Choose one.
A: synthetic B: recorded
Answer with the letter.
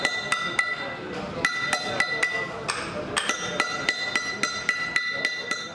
B